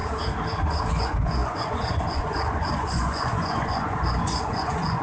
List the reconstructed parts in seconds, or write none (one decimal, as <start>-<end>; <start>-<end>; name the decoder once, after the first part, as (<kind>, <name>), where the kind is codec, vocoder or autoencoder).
0.9-5.0 (vocoder, Vocos)